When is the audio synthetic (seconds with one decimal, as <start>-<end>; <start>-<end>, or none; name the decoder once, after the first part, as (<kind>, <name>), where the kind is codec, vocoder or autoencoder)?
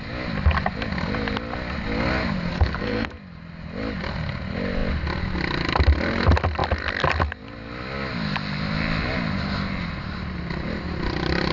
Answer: 2.5-3.1 (codec, SNAC)